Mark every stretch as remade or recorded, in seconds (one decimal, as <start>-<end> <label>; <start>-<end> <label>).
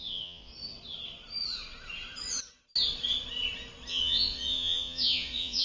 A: 0.0-0.5 remade; 0.5-3.9 recorded; 3.9-5.6 remade